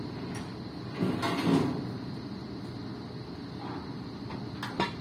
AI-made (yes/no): no